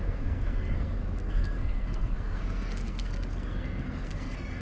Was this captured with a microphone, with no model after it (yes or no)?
no